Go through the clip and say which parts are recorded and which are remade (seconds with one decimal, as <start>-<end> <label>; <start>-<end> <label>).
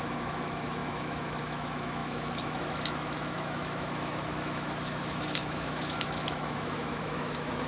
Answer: 0.0-7.7 remade